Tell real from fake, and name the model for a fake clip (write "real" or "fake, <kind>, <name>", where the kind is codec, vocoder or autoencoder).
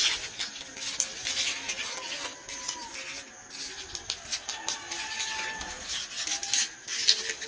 real